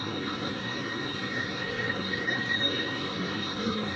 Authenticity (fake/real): fake